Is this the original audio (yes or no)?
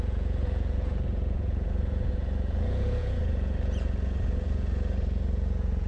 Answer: no